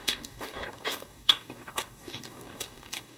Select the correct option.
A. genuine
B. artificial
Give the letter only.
B